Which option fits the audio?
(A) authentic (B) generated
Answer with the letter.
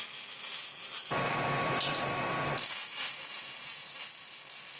A